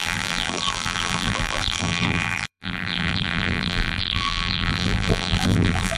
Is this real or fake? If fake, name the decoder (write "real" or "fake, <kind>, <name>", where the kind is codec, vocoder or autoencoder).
fake, vocoder, BigVGAN v2